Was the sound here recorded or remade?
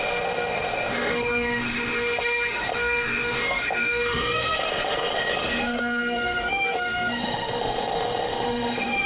remade